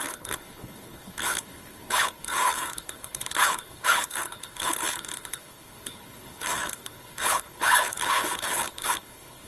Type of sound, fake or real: fake